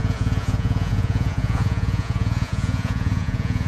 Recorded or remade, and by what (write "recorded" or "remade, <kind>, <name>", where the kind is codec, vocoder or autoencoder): remade, vocoder, Vocos